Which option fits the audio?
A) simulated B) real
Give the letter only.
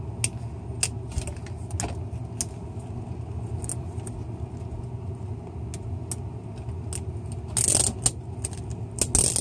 B